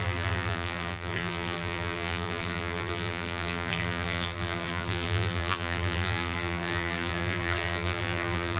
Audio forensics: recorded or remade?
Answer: remade